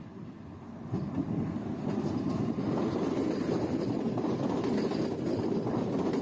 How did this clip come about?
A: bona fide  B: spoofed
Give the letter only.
A